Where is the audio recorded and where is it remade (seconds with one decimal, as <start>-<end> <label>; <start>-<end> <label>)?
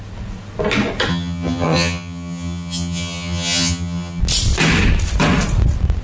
0.0-1.1 recorded; 1.1-4.2 remade; 4.2-6.0 recorded